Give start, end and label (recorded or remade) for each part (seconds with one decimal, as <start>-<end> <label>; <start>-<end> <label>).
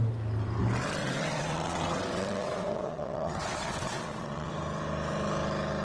0.0-1.0 recorded; 1.0-4.5 remade; 4.5-5.8 recorded